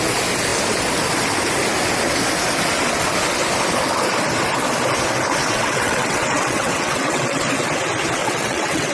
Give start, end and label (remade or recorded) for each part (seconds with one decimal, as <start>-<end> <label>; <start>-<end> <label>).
0.0-5.4 recorded; 5.4-7.4 remade; 7.4-8.2 recorded; 8.2-8.9 remade